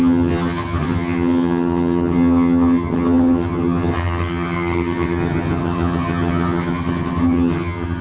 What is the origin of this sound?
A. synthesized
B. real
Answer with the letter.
A